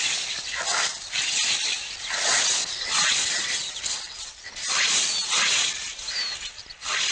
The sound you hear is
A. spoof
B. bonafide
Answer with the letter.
B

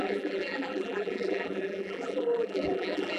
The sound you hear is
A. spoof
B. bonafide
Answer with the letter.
A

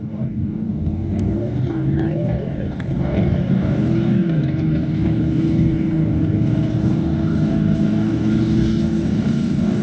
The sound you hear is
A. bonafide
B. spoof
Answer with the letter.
B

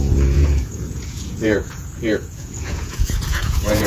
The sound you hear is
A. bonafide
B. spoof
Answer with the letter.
B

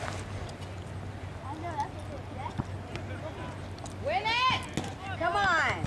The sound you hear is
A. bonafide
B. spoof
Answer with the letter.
A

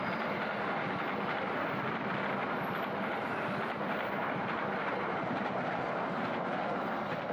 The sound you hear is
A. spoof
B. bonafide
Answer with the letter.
B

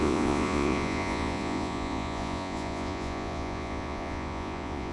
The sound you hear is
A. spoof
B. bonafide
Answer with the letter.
A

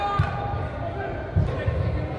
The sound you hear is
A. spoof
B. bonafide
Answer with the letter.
B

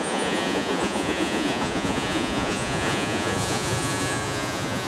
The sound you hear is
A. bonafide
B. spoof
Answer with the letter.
B